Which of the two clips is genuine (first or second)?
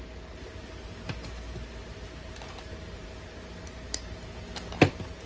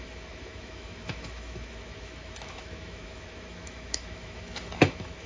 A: first